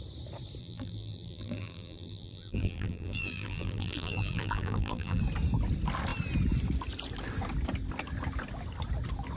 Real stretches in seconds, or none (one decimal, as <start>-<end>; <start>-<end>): 0.0-0.6; 5.2-9.4